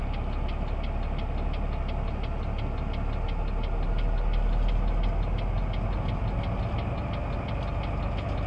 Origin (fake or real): real